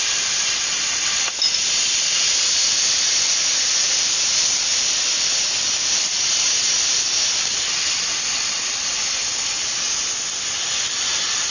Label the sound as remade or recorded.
recorded